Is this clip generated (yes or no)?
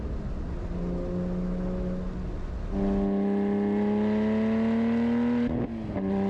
no